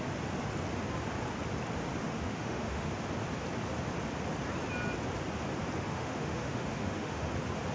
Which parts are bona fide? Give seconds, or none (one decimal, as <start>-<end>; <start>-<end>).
0.0-2.0; 2.9-5.9; 7.3-7.7